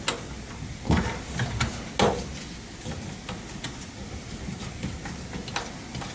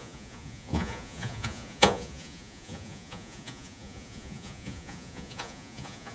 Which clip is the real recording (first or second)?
first